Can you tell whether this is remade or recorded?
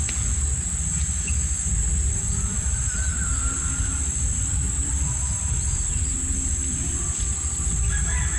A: recorded